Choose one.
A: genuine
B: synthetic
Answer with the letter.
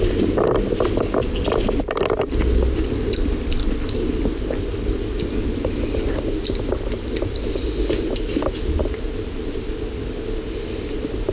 A